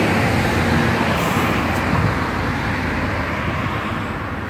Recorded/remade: recorded